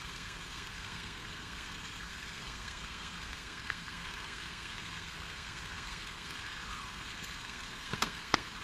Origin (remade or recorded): remade